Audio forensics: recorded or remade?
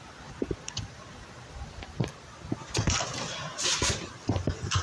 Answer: recorded